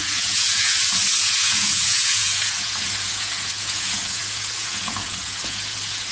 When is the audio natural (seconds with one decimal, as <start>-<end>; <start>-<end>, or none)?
none